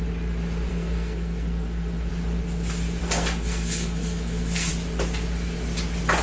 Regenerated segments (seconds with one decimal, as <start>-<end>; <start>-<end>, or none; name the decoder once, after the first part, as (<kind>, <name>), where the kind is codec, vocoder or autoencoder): 0.7-2.1 (codec, SNAC); 3.0-4.7